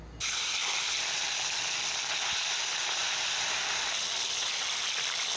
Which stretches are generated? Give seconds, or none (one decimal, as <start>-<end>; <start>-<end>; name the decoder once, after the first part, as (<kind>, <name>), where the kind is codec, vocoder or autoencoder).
0.6-1.6 (vocoder, BigVGAN v2); 3.0-3.9